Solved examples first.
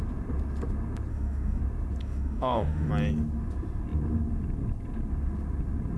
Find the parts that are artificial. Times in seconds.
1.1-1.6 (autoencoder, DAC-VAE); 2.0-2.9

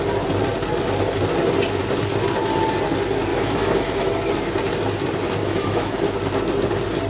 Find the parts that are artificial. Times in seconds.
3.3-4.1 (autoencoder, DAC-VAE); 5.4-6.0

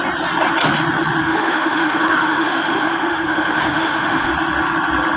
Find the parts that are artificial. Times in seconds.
1.2-4.3 (autoencoder, DAC-VAE)